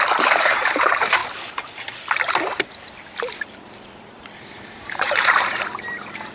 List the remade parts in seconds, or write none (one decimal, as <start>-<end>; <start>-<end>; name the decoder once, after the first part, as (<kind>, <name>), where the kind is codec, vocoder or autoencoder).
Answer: 0.0-1.2 (vocoder, BigVGAN v2); 4.4-6.3